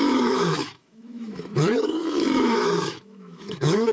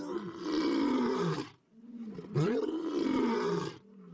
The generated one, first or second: first